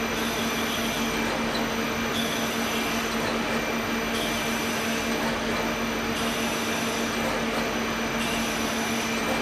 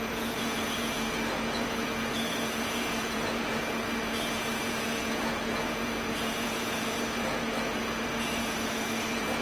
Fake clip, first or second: second